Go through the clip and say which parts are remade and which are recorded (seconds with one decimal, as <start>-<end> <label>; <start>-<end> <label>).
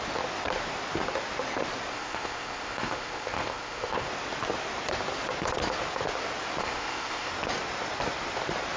0.0-1.9 recorded; 1.9-4.1 remade; 4.1-6.6 recorded; 6.6-7.3 remade; 7.3-8.8 recorded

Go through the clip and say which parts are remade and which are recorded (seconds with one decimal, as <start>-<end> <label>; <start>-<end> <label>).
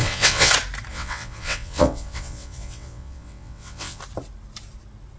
0.0-0.5 remade; 0.5-0.9 recorded; 0.9-4.0 remade; 4.0-5.2 recorded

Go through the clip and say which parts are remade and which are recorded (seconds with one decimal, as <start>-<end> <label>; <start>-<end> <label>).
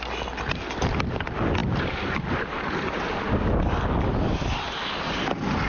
0.0-5.7 recorded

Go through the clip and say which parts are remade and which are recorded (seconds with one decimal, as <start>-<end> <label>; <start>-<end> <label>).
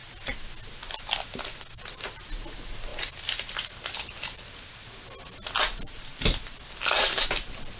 0.0-7.8 recorded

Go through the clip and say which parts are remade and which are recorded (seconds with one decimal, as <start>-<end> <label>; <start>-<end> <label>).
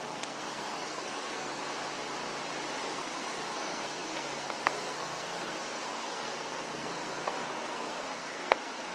0.0-1.6 remade; 1.6-2.8 recorded; 2.8-8.9 remade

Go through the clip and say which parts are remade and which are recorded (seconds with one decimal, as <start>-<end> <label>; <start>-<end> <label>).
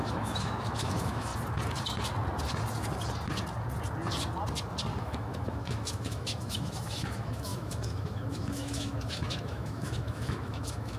0.0-1.3 remade; 1.3-5.0 recorded; 5.0-11.0 remade